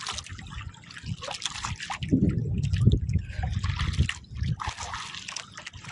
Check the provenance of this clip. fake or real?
real